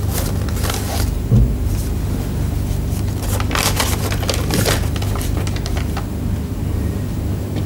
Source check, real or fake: real